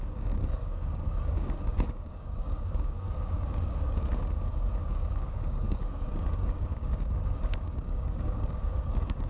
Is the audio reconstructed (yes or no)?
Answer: yes